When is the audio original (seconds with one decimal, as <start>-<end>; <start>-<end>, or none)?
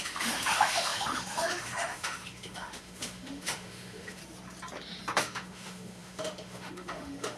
4.2-5.2